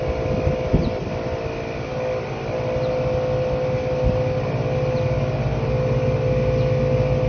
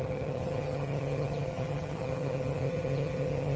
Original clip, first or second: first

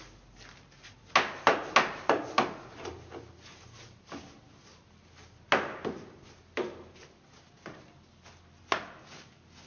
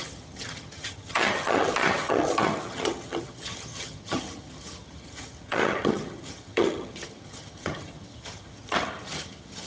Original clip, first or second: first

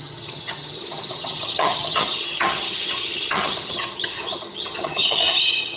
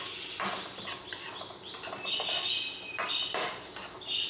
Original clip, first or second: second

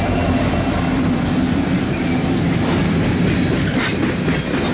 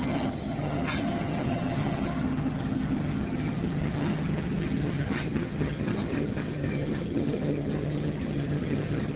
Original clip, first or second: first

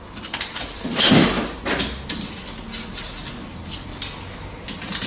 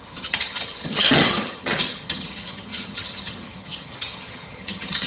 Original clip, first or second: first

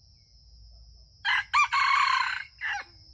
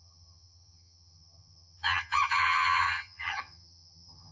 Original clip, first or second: first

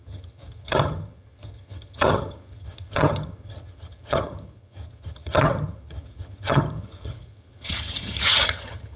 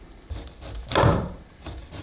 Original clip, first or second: second